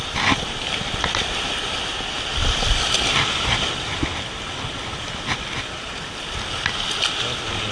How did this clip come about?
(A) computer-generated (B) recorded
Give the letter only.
B